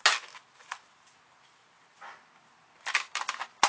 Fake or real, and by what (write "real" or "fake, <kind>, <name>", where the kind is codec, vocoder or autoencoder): real